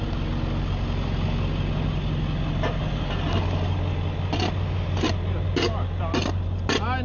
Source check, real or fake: real